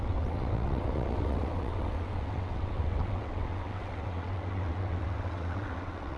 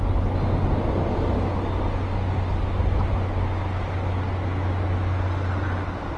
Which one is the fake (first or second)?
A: first